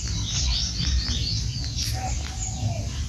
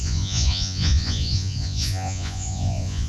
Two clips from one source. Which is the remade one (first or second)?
second